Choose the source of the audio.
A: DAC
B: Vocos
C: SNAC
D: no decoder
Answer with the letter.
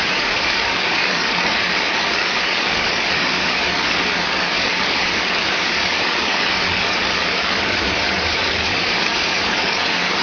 A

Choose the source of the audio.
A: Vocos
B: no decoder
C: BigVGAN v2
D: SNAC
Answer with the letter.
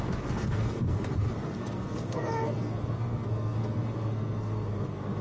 D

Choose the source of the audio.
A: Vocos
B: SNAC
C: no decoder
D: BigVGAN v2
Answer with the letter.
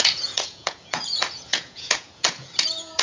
A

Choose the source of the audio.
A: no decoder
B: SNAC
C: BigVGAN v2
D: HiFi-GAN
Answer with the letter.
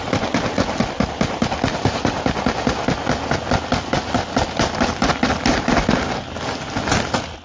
A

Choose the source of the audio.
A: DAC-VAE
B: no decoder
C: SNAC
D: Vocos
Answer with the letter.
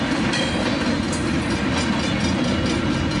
B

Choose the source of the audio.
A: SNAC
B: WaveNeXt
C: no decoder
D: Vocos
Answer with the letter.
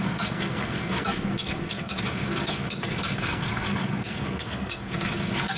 A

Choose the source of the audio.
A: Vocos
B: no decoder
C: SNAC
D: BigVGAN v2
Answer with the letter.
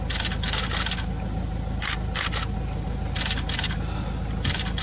B